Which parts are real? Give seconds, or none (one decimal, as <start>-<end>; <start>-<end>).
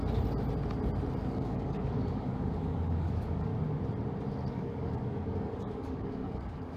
0.0-1.2; 3.5-4.5